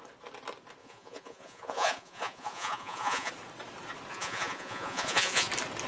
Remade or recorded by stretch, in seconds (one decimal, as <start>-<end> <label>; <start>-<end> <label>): 0.0-0.8 recorded; 0.8-3.3 remade; 3.3-4.1 recorded; 4.1-5.5 remade; 5.5-5.9 recorded